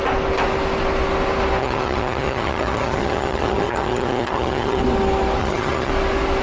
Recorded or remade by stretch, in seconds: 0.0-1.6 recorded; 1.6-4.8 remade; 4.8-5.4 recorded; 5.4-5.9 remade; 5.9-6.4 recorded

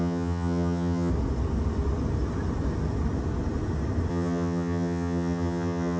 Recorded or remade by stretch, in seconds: 0.0-1.1 remade; 1.1-4.1 recorded; 4.1-6.0 remade

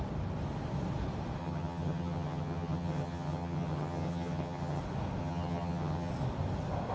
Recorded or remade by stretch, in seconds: 0.0-1.4 recorded; 1.4-4.8 remade; 4.8-5.2 recorded; 5.2-6.1 remade; 6.1-6.9 recorded

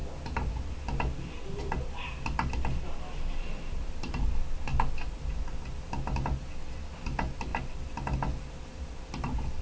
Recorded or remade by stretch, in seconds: 0.0-9.6 recorded

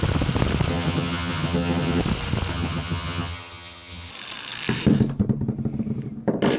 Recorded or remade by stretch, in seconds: 0.0-0.7 recorded; 0.7-2.0 remade; 2.0-2.5 recorded; 2.5-4.1 remade; 4.1-6.6 recorded

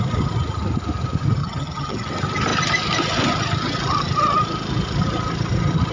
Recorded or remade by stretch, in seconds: 0.0-1.4 recorded; 1.4-2.1 remade; 2.1-5.9 recorded

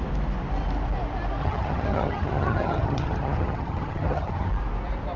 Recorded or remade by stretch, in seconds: 0.0-1.4 recorded; 1.4-4.5 remade; 4.5-5.2 recorded

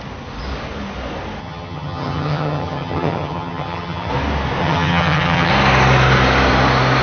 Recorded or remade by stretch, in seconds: 0.0-1.4 recorded; 1.4-4.1 remade; 4.1-4.6 recorded; 4.6-5.5 remade; 5.5-7.0 recorded